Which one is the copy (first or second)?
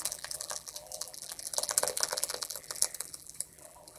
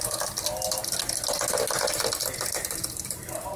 first